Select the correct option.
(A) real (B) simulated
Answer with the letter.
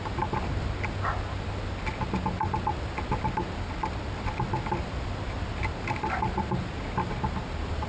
A